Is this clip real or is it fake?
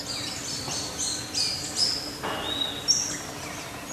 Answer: real